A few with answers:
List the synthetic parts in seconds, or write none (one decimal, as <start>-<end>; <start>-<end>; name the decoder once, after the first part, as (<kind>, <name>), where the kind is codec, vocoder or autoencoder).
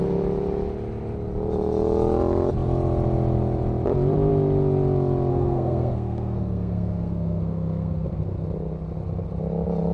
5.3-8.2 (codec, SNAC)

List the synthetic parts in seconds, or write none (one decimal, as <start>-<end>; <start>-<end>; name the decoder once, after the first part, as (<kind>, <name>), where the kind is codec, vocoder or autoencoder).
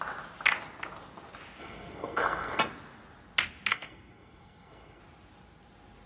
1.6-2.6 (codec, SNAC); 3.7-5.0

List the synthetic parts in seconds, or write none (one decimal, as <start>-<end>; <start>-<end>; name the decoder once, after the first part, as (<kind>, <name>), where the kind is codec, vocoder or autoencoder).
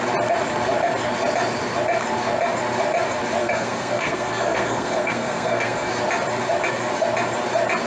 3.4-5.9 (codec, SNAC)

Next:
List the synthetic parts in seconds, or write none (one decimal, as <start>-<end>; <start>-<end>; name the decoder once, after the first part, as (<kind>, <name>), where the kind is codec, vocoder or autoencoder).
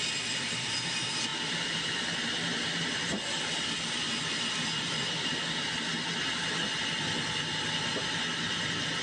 none